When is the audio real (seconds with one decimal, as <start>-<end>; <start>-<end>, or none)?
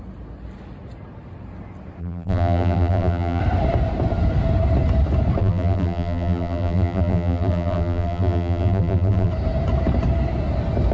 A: 0.0-2.0; 3.4-5.4; 9.3-10.9